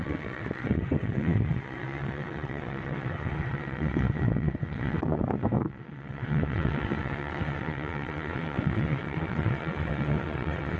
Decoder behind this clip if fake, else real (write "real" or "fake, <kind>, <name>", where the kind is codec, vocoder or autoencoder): fake, vocoder, WaveNeXt